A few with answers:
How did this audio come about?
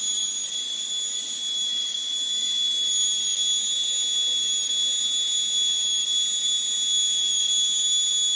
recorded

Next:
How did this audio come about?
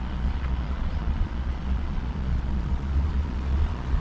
remade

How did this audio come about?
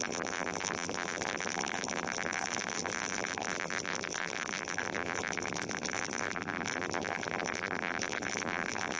remade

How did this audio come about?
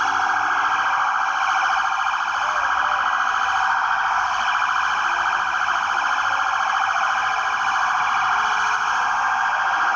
recorded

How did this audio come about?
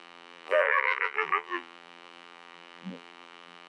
remade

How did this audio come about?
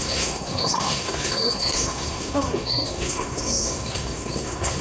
remade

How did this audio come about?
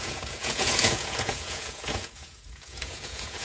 remade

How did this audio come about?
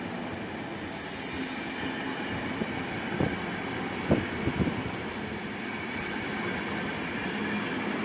recorded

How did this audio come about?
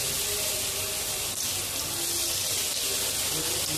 recorded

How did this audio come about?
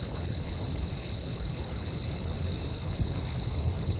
remade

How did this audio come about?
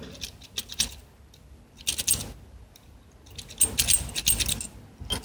recorded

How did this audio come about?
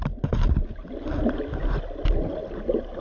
recorded